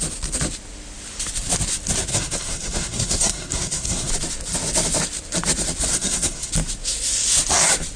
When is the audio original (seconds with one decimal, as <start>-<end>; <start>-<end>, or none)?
0.0-2.1; 4.1-5.9; 6.5-8.0